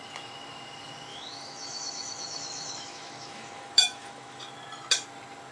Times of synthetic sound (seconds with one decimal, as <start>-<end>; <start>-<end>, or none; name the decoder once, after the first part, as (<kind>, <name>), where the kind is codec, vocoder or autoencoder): 1.1-4.4 (autoencoder, DAC-VAE)